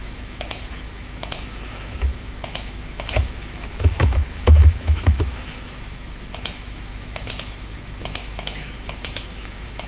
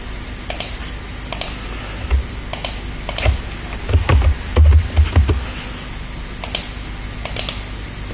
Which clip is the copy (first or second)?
first